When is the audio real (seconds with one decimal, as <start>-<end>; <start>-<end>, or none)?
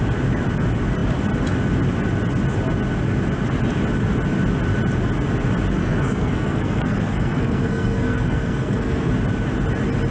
0.0-5.8; 9.1-10.1